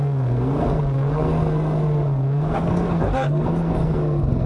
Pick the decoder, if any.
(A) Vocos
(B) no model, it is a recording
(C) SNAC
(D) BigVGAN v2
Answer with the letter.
C